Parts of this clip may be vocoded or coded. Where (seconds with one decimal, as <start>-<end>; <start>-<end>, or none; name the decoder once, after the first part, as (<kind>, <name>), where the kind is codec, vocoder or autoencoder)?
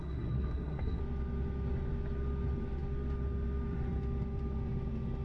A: 0.0-1.0 (codec, SNAC)